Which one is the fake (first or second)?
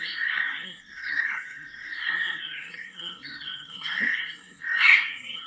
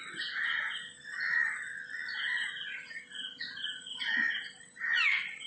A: first